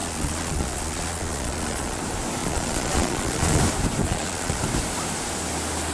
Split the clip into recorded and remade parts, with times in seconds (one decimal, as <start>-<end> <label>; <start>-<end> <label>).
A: 0.0-2.0 remade; 2.0-2.4 recorded; 2.4-3.6 remade; 3.6-4.0 recorded; 4.0-4.6 remade; 4.6-5.9 recorded